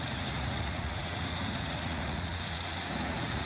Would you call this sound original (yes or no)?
no